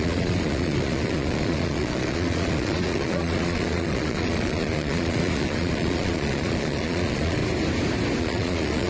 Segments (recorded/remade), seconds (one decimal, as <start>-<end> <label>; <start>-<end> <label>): 0.0-7.4 remade; 7.4-8.2 recorded; 8.2-8.9 remade